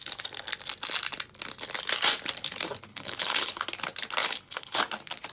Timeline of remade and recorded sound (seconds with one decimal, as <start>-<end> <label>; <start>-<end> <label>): 0.0-2.9 recorded; 2.9-3.6 remade; 3.6-4.2 recorded; 4.2-4.8 remade; 4.8-5.3 recorded